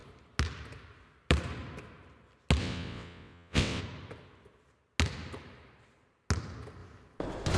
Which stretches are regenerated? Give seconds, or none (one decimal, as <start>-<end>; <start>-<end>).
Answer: 2.6-3.8